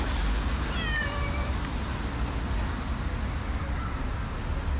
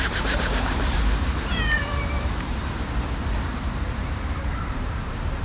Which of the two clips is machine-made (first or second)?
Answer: second